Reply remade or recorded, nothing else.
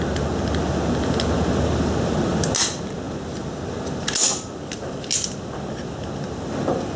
recorded